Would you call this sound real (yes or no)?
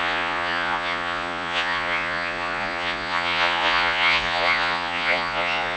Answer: no